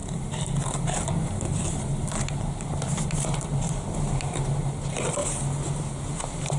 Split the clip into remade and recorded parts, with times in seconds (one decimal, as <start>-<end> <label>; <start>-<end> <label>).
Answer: 0.0-5.2 remade; 5.2-6.1 recorded; 6.1-6.6 remade